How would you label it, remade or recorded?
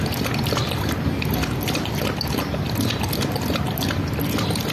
recorded